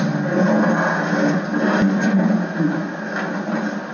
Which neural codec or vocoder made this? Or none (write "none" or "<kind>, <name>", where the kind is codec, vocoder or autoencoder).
none